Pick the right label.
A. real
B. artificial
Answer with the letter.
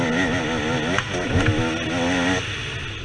A